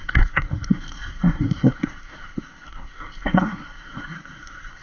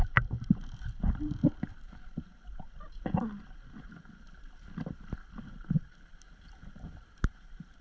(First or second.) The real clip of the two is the second